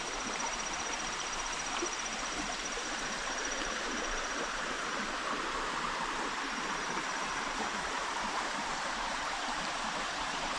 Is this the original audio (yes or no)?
no